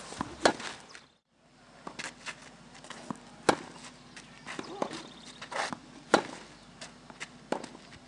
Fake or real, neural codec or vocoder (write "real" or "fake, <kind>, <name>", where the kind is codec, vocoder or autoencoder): real